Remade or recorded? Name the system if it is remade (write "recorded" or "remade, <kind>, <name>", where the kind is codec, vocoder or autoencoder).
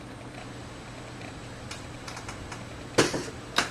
recorded